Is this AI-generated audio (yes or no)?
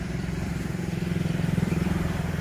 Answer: yes